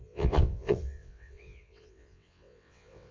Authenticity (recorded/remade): remade